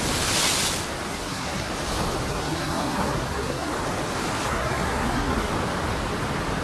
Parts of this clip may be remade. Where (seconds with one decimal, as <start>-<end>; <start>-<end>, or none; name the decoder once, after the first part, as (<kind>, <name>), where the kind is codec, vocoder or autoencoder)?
1.1-1.7 (codec, SNAC); 2.3-3.7; 4.5-5.5